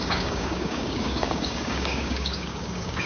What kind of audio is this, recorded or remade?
remade